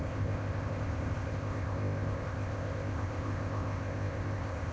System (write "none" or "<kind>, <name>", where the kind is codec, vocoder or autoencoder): codec, ZipCodec